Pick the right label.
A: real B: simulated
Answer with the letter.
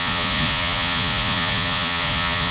B